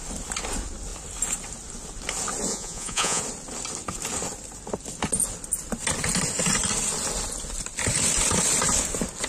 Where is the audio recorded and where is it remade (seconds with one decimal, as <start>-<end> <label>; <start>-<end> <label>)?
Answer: 0.0-2.5 recorded; 2.5-3.2 remade; 3.2-9.3 recorded